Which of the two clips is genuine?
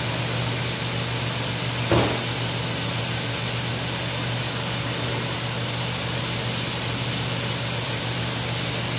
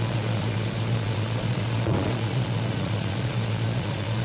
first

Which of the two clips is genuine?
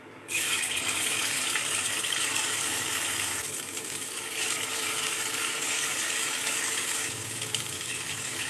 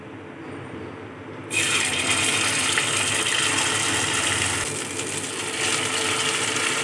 second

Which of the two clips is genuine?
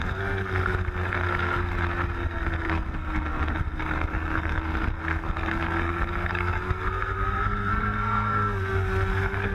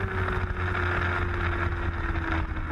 second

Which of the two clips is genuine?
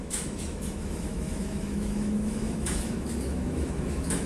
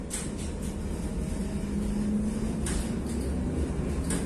second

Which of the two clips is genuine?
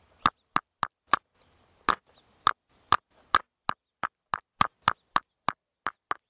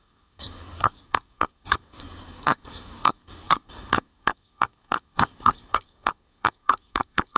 first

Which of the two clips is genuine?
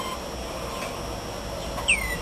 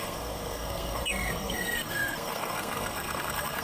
first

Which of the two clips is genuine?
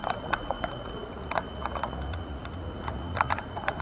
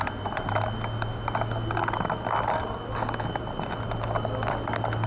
second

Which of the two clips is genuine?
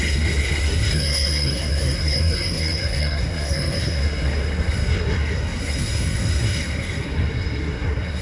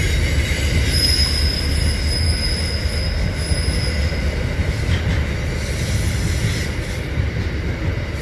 second